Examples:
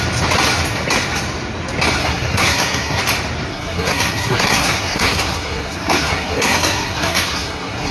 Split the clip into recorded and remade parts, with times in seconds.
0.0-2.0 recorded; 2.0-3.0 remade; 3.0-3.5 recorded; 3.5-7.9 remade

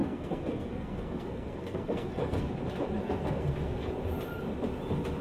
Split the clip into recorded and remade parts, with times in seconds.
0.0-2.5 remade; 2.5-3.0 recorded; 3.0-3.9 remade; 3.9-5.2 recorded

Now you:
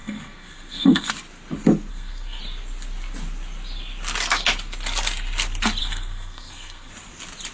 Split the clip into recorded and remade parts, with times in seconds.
0.0-1.1 remade; 1.1-1.9 recorded; 1.9-2.4 remade; 2.4-5.8 recorded; 5.8-6.9 remade; 6.9-7.5 recorded